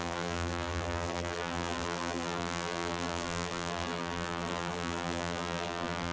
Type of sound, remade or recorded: remade